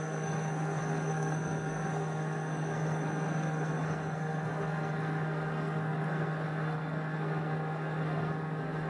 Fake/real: fake